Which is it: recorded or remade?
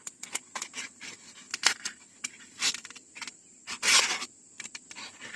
recorded